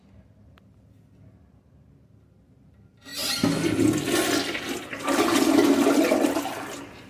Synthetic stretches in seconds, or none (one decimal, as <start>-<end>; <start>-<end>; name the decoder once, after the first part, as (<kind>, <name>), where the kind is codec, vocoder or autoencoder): none